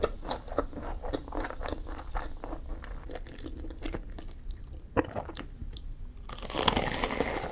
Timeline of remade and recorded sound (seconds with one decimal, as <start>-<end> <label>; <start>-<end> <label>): 0.0-1.6 recorded; 1.6-2.4 remade; 2.4-7.5 recorded